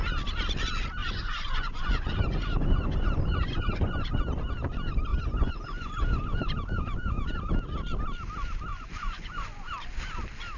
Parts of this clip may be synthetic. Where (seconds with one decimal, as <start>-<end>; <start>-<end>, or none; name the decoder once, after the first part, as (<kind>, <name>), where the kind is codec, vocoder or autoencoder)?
1.0-4.1 (vocoder, Vocos); 5.1-7.5; 8.7-9.7